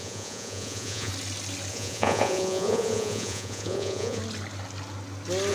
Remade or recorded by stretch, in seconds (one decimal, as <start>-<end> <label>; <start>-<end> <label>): 0.0-1.1 remade; 1.1-1.7 recorded; 1.7-4.2 remade; 4.2-5.5 recorded